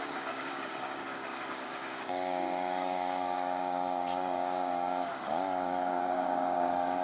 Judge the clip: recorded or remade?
remade